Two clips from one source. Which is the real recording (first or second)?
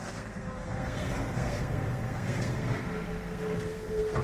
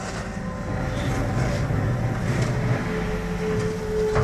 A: second